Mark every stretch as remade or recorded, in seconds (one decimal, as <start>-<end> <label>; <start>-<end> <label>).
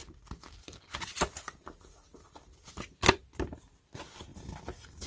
0.0-3.1 remade; 3.1-5.1 recorded